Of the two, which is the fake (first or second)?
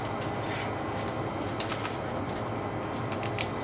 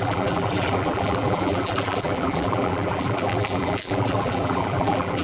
second